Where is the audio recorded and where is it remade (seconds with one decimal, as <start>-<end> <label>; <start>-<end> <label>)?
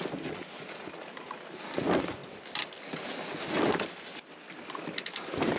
0.0-5.6 recorded